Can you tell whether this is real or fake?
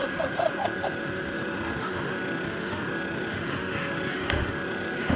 fake